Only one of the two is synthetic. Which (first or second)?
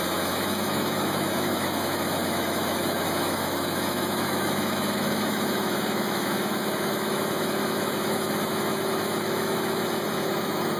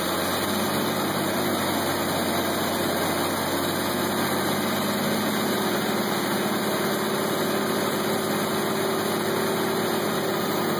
first